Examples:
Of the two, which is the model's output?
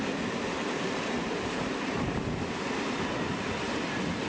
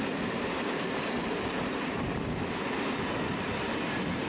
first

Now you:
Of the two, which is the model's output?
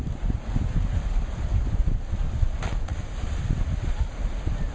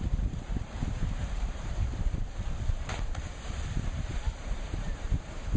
second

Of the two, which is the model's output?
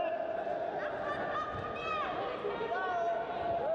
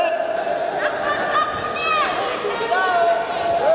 first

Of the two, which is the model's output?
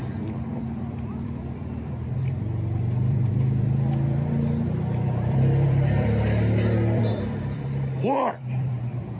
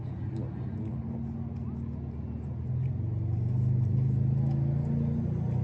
first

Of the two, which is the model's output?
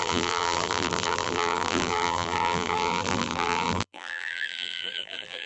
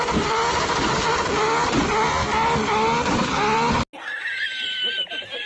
first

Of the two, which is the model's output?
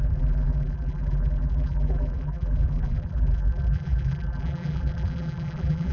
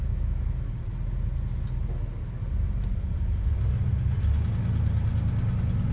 first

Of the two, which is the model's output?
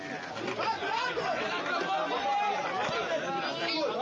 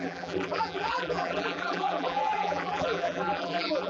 second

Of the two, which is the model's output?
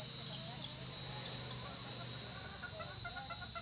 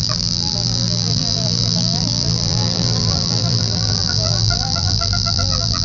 second